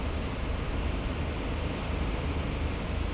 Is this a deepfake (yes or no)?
no